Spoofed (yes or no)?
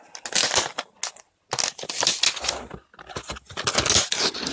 no